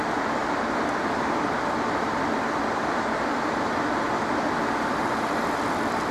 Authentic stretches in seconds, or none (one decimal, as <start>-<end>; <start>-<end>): 0.4-1.0